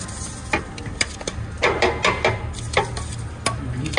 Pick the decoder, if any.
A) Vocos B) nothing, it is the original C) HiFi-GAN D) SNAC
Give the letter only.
B